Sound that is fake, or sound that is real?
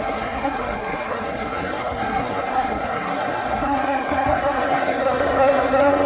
fake